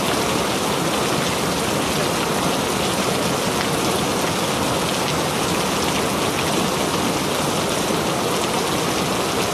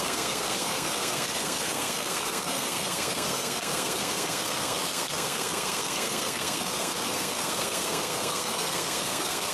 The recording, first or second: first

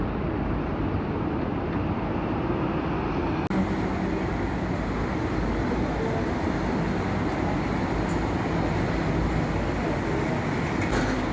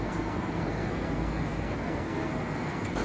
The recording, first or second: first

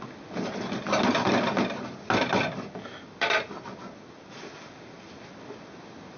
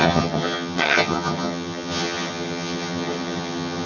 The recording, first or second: first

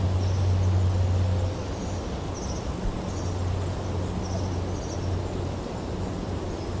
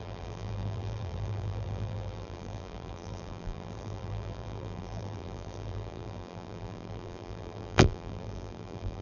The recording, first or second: first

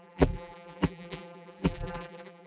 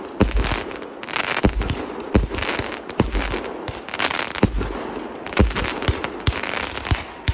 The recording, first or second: second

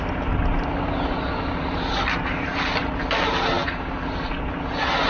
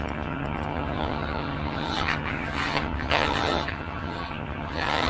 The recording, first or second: first